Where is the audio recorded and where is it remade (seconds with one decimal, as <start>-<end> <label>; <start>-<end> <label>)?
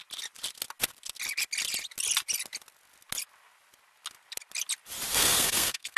0.0-5.1 recorded; 5.1-6.0 remade